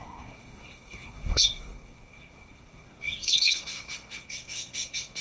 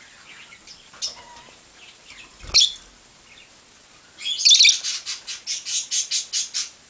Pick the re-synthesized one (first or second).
first